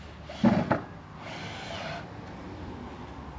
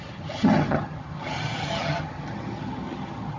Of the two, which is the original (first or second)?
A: first